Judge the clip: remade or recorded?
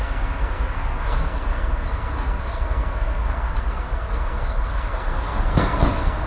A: remade